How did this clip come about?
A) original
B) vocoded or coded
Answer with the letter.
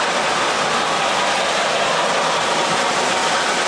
A